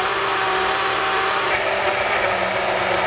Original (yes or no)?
yes